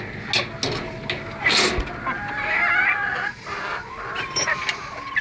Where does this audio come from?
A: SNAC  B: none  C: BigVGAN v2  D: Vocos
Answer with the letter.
B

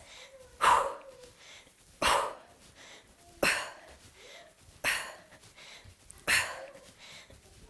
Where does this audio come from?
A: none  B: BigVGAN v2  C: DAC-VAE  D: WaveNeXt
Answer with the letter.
A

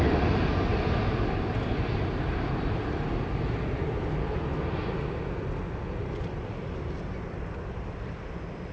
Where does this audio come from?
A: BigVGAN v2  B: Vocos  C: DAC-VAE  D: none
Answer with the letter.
D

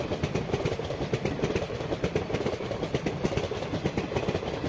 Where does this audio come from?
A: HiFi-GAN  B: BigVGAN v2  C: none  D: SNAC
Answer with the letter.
B